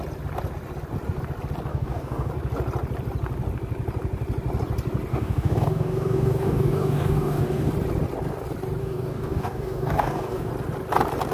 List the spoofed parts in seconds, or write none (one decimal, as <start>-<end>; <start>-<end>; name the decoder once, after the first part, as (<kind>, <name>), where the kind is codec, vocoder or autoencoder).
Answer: 1.7-2.3 (codec, DAC); 5.1-7.7; 8.8-10.5